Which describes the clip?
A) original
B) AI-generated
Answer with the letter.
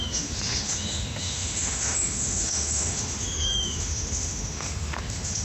B